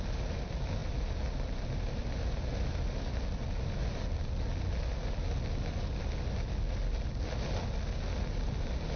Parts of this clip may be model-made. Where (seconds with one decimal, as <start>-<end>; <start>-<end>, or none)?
none